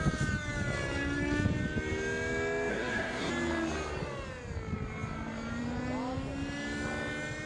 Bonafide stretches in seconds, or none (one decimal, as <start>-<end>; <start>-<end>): 0.0-2.7; 3.3-7.5